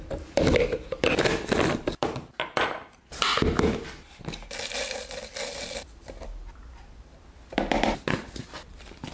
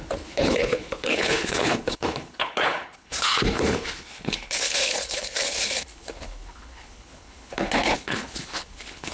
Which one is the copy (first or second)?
second